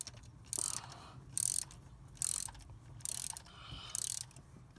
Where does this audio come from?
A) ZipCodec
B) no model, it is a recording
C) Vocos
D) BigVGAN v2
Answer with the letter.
B